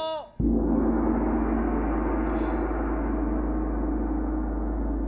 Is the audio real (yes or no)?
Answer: yes